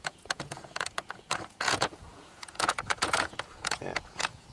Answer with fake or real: fake